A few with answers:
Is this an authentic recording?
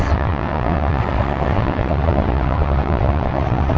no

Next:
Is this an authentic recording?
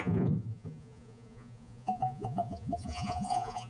no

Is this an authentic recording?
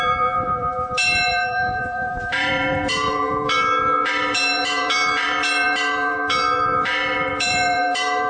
no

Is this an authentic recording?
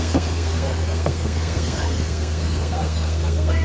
no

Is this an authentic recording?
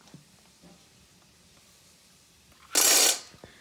yes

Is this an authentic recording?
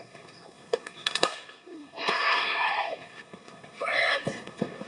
no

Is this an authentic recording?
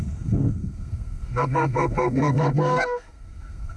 no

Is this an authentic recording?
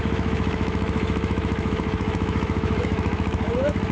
no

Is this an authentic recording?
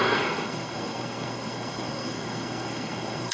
no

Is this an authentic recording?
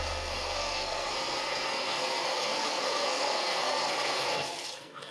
no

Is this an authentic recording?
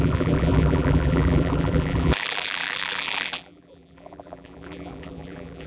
no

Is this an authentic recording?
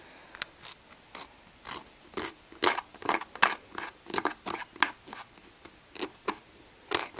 yes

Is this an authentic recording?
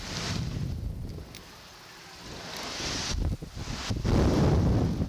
yes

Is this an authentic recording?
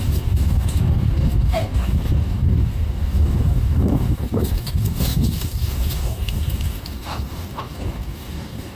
no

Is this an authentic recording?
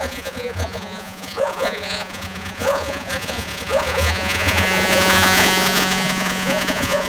no